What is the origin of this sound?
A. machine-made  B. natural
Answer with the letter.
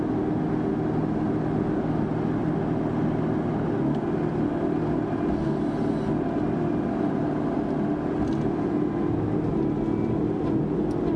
B